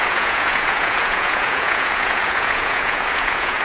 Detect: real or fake fake